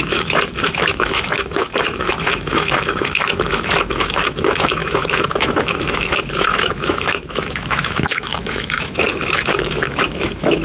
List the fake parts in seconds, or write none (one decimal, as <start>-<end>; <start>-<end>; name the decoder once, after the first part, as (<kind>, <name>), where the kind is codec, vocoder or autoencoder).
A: 0.0-10.6 (autoencoder, DAC-VAE)